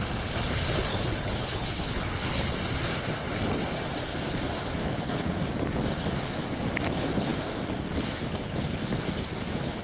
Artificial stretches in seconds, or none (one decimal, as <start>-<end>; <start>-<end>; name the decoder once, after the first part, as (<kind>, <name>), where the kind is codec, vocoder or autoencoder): 0.9-2.5 (codec, HILCodec); 4.8-5.3